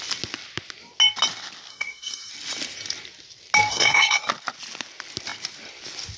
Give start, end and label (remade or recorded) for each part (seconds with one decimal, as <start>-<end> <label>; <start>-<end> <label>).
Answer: 0.0-1.7 recorded; 1.7-2.3 remade; 2.3-3.7 recorded; 3.7-4.2 remade; 4.2-6.2 recorded